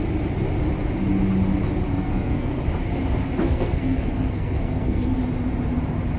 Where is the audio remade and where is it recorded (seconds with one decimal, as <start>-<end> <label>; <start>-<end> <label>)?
0.0-1.9 recorded; 1.9-2.6 remade; 2.6-3.4 recorded; 3.4-5.2 remade; 5.2-6.2 recorded